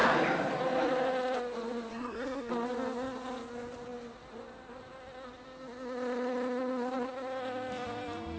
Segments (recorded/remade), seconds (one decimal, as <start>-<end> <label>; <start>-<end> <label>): 0.0-1.9 recorded; 1.9-2.5 remade; 2.5-8.4 recorded